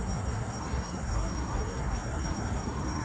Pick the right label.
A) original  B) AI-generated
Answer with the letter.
B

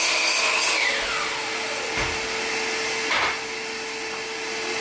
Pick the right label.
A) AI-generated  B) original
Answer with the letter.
B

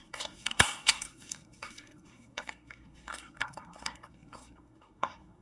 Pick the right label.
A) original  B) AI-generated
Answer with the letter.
B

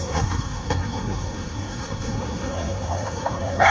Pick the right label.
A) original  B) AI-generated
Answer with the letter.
B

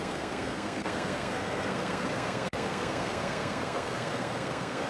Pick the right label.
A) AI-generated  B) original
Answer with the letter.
A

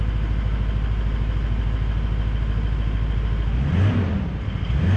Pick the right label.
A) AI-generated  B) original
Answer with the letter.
B